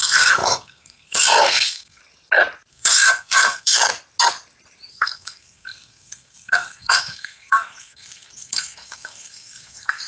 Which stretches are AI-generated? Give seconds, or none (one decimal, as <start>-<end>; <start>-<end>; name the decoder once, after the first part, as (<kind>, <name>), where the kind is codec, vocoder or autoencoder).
0.0-2.0 (codec, SNAC); 2.7-3.9; 4.9-10.1